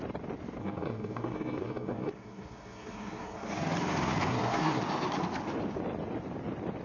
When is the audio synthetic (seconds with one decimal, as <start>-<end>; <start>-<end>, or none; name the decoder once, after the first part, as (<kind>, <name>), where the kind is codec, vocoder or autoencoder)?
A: 0.6-3.6 (codec, SNAC); 4.3-4.8